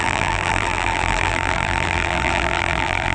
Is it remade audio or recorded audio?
remade